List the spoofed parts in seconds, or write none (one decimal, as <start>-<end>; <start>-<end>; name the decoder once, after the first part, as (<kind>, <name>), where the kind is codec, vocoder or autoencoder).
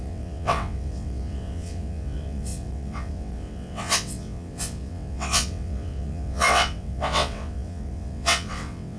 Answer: 0.0-9.0 (vocoder, WaveNeXt)